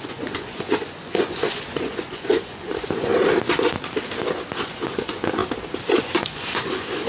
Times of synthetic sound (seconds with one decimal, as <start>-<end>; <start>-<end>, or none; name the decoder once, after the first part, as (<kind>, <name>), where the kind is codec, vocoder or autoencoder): 0.0-3.1 (vocoder, Vocos); 4.6-5.4; 6.0-7.1